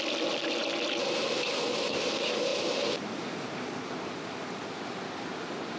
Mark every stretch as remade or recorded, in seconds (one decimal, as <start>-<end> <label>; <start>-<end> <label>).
0.0-5.8 recorded

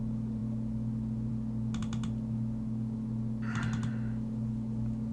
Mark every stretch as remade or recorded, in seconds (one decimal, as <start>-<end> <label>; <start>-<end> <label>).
0.0-5.1 recorded